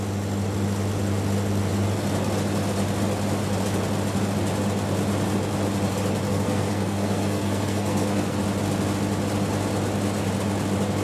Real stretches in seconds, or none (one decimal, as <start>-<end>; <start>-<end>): 0.0-6.3; 8.4-11.0